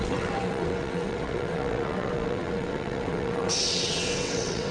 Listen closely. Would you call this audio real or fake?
fake